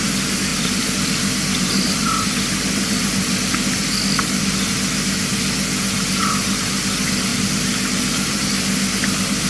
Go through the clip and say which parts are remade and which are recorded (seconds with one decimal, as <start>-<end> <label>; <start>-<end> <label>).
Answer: 0.0-0.5 recorded; 0.5-4.5 remade; 4.5-7.3 recorded; 7.3-8.5 remade; 8.5-9.5 recorded